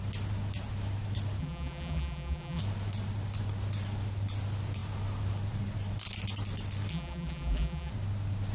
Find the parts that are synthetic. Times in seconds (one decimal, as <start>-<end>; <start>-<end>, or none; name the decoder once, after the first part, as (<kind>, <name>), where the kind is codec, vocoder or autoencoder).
1.4-2.6 (vocoder, BigVGAN v2); 6.9-7.9